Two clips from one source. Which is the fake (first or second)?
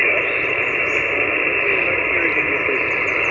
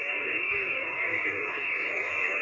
second